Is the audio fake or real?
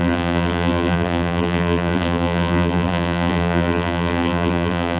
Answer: fake